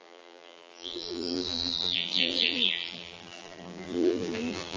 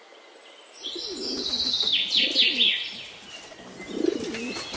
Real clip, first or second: second